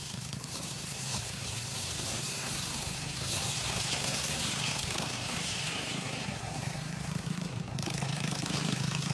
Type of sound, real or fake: fake